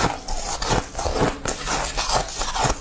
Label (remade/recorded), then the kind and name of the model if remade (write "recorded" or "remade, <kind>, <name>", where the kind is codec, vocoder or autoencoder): recorded